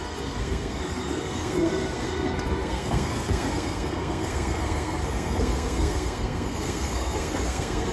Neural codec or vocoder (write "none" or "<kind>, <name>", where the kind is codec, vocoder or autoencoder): codec, SNAC